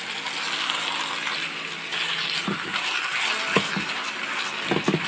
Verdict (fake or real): real